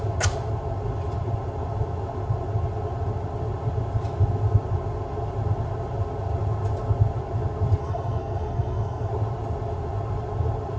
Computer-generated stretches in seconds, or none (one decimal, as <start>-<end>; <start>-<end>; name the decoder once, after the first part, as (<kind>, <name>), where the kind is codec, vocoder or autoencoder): 7.8-9.1 (codec, SNAC)